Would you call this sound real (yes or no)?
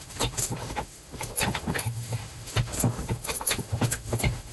no